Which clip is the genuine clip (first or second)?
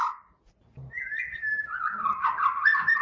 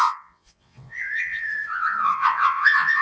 first